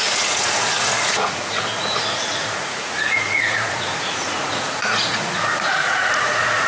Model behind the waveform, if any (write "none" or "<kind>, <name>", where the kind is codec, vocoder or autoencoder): vocoder, Vocos